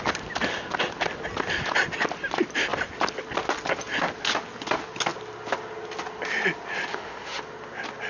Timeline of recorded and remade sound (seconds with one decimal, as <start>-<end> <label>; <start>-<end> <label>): 0.0-6.9 recorded; 6.9-7.4 remade; 7.4-8.1 recorded